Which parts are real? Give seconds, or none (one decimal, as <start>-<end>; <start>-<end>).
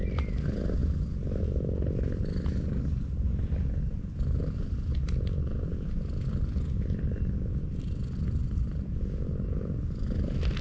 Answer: 0.0-10.6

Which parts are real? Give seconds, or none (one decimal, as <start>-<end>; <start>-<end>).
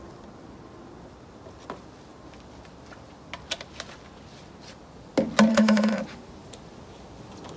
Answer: 0.0-5.5; 6.0-7.6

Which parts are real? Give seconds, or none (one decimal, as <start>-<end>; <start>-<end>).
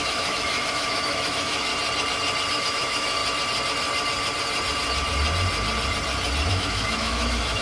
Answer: 1.7-2.5; 3.2-6.5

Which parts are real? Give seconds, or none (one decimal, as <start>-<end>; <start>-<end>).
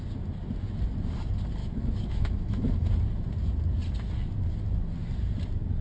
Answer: 0.0-1.6; 2.9-5.8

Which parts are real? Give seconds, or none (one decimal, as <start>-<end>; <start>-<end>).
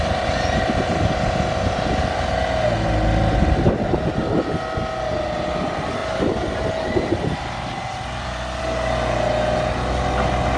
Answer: 0.0-10.6